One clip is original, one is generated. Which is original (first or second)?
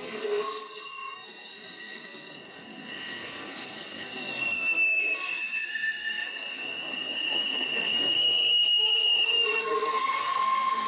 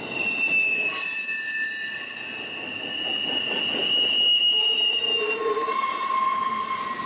second